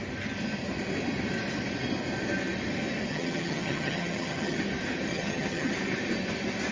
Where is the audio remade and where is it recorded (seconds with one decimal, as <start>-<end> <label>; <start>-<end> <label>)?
0.0-3.1 recorded; 3.1-4.6 remade; 4.6-5.1 recorded; 5.1-5.7 remade; 5.7-6.7 recorded